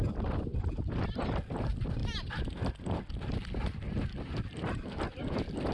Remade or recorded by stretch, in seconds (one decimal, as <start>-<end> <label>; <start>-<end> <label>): 0.0-5.7 recorded